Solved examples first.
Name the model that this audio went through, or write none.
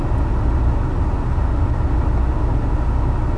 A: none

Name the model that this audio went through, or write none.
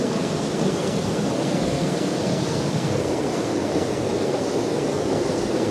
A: codec, SNAC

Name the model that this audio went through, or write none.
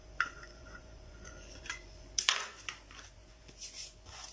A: vocoder, Vocos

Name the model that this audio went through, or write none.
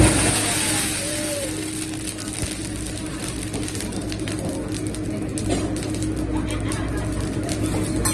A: none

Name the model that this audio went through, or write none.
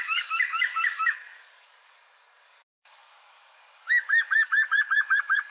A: codec, DAC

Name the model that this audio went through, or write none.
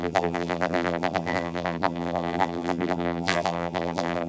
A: vocoder, BigVGAN v2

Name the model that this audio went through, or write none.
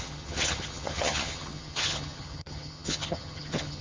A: vocoder, HiFi-GAN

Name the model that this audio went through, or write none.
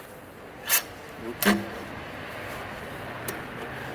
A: none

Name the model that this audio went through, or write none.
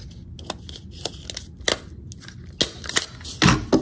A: none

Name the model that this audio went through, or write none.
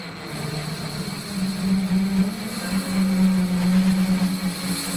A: none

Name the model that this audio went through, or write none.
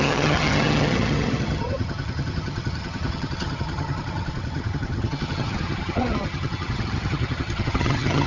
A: vocoder, HiFi-GAN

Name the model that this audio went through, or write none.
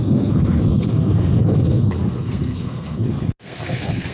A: codec, SNAC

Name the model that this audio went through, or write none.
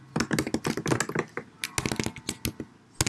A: none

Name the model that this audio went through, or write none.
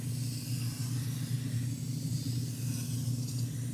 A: none